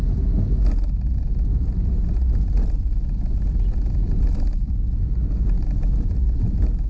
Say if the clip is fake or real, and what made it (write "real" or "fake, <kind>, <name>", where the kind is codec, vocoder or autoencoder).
real